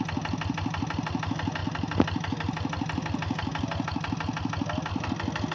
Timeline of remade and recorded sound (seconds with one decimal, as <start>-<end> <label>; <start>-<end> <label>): 0.0-5.5 recorded